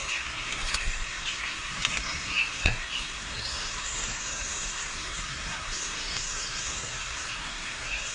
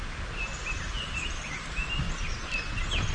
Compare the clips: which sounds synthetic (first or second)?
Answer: first